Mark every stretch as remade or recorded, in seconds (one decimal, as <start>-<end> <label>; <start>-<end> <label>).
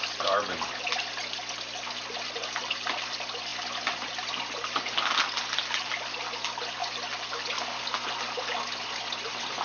0.0-9.6 recorded